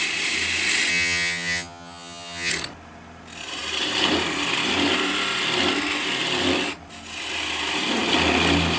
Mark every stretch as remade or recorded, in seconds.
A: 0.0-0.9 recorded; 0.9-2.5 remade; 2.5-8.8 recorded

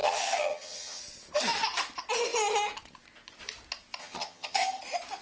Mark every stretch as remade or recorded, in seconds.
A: 0.0-1.0 remade; 1.0-4.0 recorded; 4.0-4.8 remade; 4.8-5.2 recorded

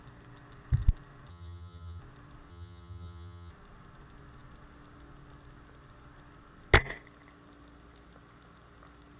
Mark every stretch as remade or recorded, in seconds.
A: 0.0-1.3 recorded; 1.3-2.0 remade; 2.0-2.5 recorded; 2.5-3.5 remade; 3.5-9.2 recorded

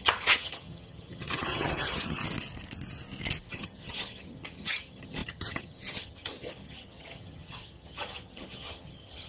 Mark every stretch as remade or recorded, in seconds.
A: 0.0-2.2 remade; 2.2-3.5 recorded; 3.5-9.3 remade

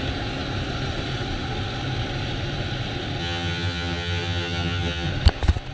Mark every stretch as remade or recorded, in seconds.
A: 0.0-3.2 recorded; 3.2-5.1 remade; 5.1-5.7 recorded

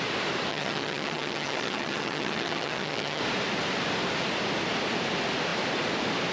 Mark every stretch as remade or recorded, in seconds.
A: 0.0-0.5 recorded; 0.5-3.2 remade; 3.2-6.3 recorded